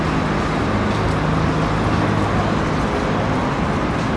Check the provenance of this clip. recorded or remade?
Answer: recorded